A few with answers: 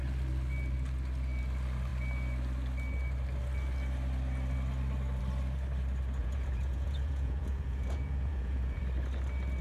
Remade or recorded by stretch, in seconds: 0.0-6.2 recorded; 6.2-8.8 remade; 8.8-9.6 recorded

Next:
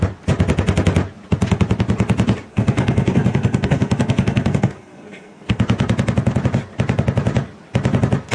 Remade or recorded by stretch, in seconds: 0.0-2.5 recorded; 2.5-5.6 remade; 5.6-8.3 recorded

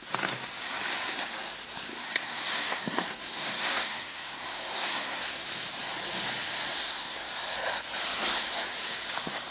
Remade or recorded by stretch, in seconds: 0.0-1.9 recorded; 1.9-5.5 remade; 5.5-6.7 recorded; 6.7-7.3 remade; 7.3-9.5 recorded